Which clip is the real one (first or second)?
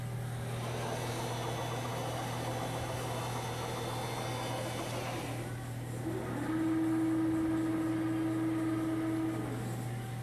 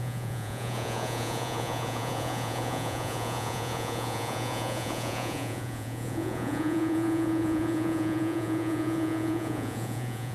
first